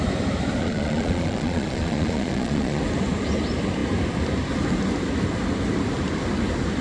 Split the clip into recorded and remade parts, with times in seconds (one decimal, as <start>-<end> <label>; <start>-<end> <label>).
0.0-0.6 recorded; 0.6-2.8 remade; 2.8-6.8 recorded